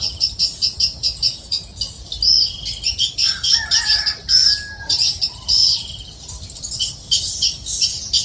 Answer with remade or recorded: recorded